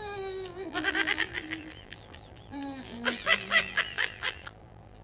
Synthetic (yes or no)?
yes